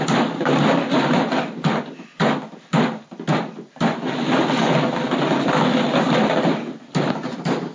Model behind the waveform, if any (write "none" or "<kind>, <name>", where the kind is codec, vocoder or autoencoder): none